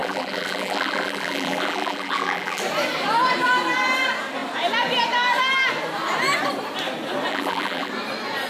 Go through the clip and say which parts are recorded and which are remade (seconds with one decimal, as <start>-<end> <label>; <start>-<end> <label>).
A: 0.0-2.6 remade; 2.6-7.3 recorded; 7.3-7.9 remade; 7.9-8.5 recorded